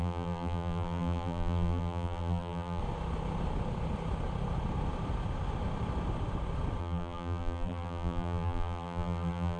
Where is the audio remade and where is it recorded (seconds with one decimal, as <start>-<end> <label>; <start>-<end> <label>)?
0.0-2.8 remade; 2.8-6.8 recorded; 6.8-9.6 remade